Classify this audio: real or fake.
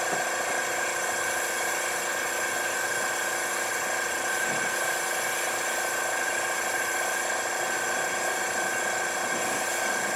real